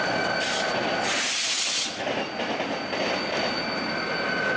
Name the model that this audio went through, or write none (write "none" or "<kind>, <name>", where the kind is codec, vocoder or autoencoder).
none